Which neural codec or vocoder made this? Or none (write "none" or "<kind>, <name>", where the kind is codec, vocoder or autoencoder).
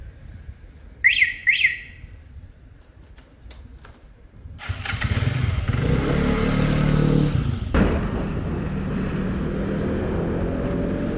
none